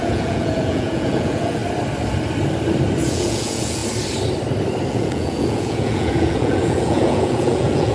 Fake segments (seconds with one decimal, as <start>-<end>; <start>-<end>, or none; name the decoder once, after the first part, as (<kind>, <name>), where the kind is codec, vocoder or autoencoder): 0.0-1.6 (vocoder, Vocos); 3.1-3.8; 4.9-7.9